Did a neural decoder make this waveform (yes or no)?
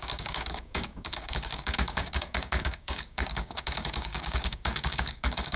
yes